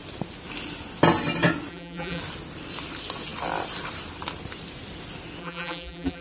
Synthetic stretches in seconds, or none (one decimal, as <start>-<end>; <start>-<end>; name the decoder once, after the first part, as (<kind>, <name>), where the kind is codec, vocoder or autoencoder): 1.7-2.2 (vocoder, BigVGAN v2); 5.4-6.2